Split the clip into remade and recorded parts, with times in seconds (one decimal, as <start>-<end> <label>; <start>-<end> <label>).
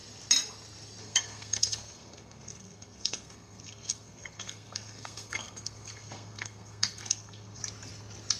0.0-1.0 recorded; 1.0-7.6 remade; 7.6-8.4 recorded